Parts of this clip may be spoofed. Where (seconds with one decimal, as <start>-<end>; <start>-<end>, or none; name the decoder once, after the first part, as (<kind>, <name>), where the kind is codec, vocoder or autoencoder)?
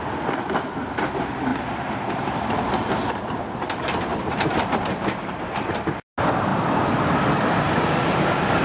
1.5-2.7 (vocoder, BigVGAN v2); 4.1-5.4